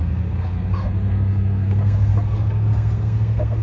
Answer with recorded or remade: remade